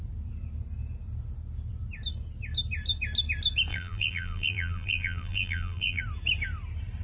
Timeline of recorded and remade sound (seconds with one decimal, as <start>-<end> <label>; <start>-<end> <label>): 0.0-3.7 recorded; 3.7-6.0 remade; 6.0-7.0 recorded